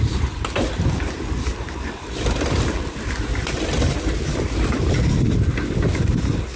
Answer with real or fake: real